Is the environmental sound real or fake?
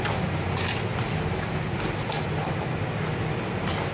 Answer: real